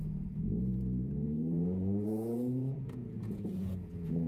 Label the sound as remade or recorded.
remade